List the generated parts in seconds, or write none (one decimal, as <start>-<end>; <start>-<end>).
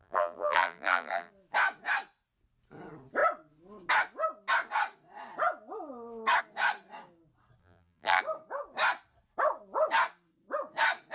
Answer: 0.0-1.3; 7.6-8.2